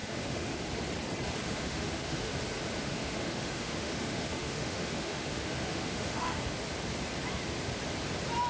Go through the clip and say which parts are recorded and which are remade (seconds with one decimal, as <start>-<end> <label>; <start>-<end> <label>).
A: 0.0-0.7 remade; 0.7-1.4 recorded; 1.4-2.3 remade; 2.3-2.8 recorded; 2.8-6.4 remade; 6.4-8.5 recorded